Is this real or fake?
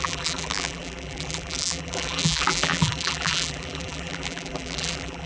fake